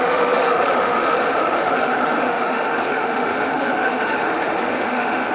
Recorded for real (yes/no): no